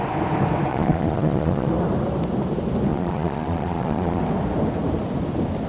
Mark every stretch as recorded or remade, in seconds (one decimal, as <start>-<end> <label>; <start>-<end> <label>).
0.0-0.7 recorded; 0.7-1.7 remade; 1.7-2.9 recorded; 2.9-4.2 remade; 4.2-5.7 recorded

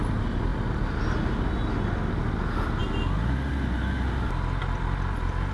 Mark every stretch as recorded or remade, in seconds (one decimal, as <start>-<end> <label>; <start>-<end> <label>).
0.0-5.5 recorded

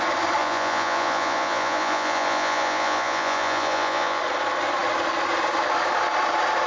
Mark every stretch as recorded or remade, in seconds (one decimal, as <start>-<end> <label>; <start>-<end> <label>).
0.0-0.4 recorded; 0.4-4.2 remade; 4.2-6.7 recorded

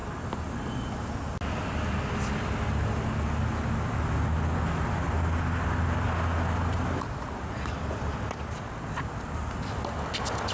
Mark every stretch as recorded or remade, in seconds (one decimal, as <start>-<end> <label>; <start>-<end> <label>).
0.0-10.5 recorded

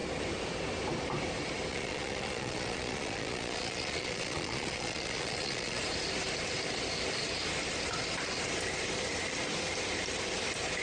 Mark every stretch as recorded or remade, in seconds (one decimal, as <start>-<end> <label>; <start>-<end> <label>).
0.0-1.7 recorded; 1.7-5.8 remade; 5.8-10.8 recorded